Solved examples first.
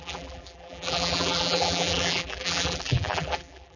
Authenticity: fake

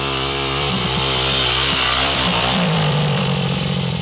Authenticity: fake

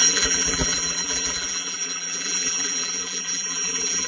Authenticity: fake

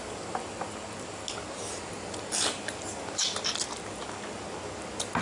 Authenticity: real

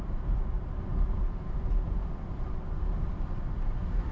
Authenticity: fake